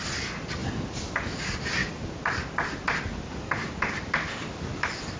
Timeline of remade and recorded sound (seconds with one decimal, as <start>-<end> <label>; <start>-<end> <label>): 0.0-5.2 recorded